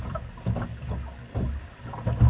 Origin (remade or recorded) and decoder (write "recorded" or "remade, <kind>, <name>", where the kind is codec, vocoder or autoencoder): recorded